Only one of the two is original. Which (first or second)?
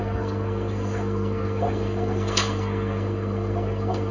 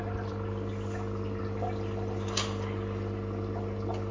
second